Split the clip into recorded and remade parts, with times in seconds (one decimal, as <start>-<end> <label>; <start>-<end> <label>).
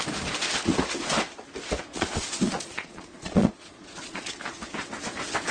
0.0-1.9 recorded; 1.9-4.3 remade; 4.3-5.5 recorded